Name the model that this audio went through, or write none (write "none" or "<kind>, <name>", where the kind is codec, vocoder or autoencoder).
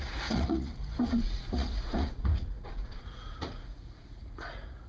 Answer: vocoder, Vocos